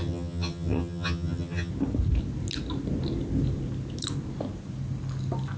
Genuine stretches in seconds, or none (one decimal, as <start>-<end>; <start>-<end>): 1.7-5.6